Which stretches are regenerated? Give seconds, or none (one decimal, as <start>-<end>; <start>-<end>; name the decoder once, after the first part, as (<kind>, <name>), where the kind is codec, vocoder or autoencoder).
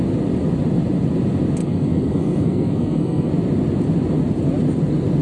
1.6-3.3 (codec, SNAC)